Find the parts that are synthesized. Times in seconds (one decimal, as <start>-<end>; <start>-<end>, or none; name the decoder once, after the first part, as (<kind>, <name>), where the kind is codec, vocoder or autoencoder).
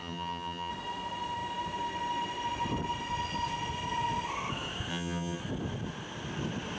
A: 0.0-0.7 (vocoder, HiFi-GAN); 4.9-5.4